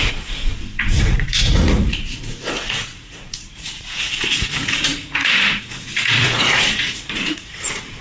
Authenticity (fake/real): fake